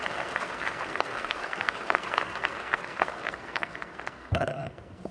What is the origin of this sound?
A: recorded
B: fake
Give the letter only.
B